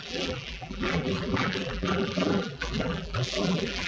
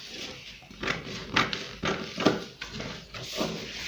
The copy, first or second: first